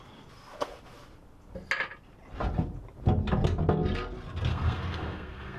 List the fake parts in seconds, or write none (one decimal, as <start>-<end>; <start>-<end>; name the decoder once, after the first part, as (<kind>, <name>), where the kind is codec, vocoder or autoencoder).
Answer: 4.5-5.6 (codec, SNAC)